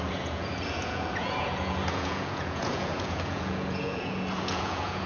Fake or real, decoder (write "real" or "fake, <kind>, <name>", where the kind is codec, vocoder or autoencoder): fake, vocoder, Vocos